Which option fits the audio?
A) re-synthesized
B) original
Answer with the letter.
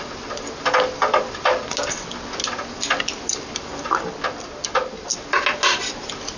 B